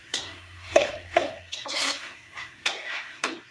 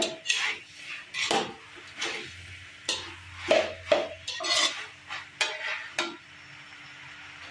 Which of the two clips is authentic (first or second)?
second